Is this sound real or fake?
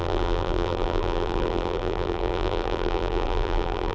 fake